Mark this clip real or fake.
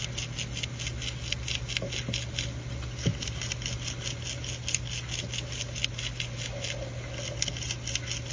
real